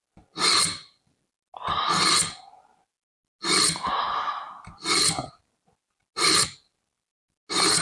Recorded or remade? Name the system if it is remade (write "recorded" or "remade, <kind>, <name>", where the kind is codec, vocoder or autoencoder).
recorded